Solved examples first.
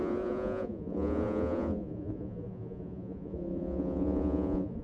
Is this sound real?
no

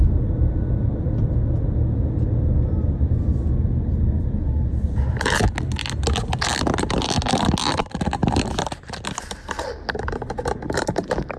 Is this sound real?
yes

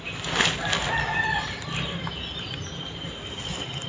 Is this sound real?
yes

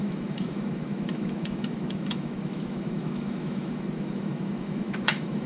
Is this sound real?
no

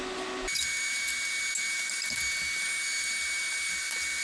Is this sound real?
yes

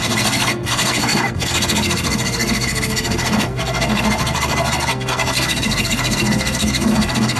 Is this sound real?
no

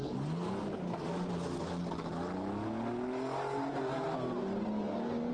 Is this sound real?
yes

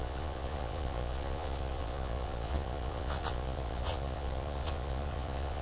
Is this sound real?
no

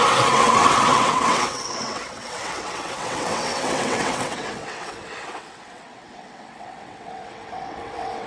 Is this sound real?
no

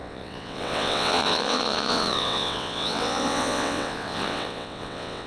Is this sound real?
no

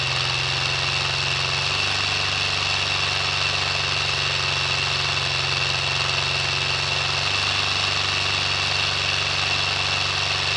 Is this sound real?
yes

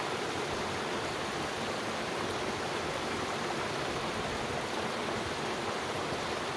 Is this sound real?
no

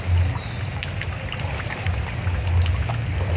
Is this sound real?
yes